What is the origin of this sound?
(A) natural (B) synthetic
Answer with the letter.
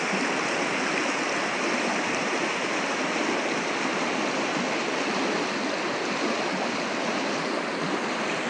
A